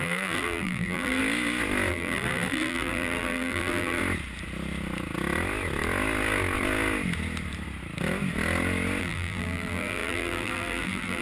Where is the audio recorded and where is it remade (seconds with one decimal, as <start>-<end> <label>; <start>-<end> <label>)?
0.0-1.2 remade; 1.2-1.9 recorded; 1.9-4.0 remade; 4.0-9.0 recorded; 9.0-11.2 remade